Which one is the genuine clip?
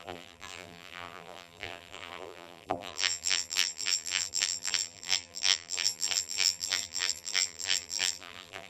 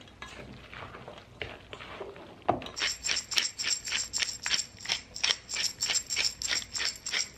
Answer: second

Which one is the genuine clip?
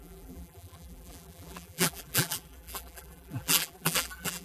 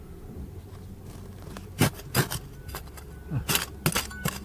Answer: second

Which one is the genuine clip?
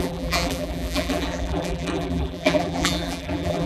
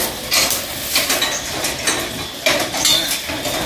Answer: second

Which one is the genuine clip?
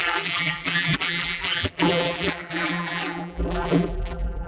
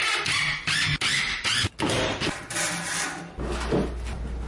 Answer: second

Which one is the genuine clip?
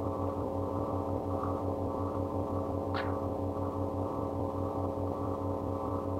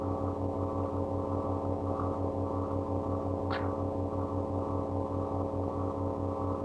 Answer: second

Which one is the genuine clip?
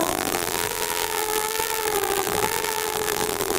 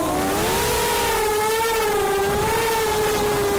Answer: second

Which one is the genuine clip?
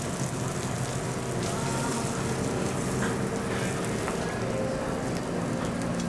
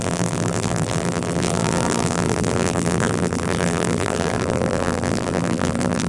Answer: first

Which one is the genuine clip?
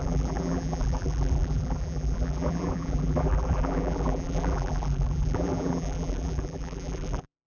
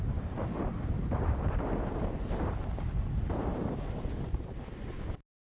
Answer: second